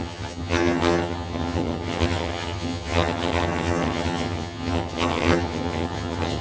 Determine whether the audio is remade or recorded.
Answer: remade